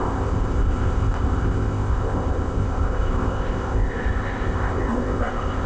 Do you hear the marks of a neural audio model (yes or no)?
yes